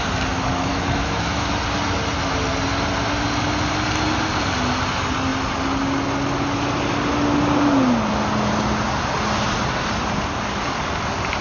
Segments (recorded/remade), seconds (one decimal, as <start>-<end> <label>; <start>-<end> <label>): 0.0-0.7 recorded; 0.7-1.5 remade; 1.5-11.4 recorded